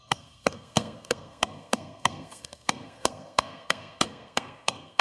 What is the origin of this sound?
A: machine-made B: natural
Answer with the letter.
A